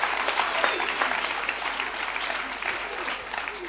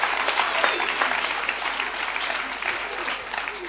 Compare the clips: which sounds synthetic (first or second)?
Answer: first